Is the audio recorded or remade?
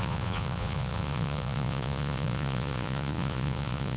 remade